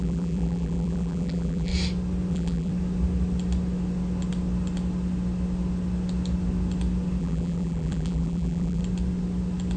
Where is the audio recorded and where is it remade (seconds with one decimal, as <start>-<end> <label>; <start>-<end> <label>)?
0.0-1.7 remade; 1.7-2.3 recorded; 2.3-2.7 remade; 2.7-7.2 recorded; 7.2-8.8 remade; 8.8-9.8 recorded